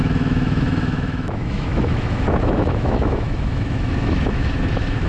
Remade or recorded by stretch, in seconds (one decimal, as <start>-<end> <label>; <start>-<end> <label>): 0.0-5.1 remade